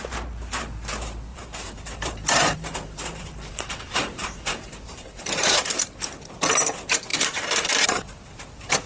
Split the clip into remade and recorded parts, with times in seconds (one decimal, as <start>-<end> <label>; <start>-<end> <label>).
0.0-1.3 recorded; 1.3-5.9 remade; 5.9-7.1 recorded; 7.1-8.9 remade